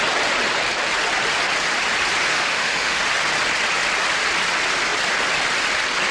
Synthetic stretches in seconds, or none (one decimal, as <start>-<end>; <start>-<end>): 2.3-3.0